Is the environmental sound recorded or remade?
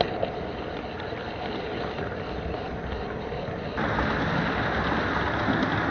recorded